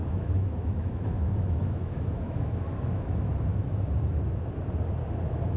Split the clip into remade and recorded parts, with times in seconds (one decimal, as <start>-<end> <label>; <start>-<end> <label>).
0.0-3.4 remade; 3.4-5.6 recorded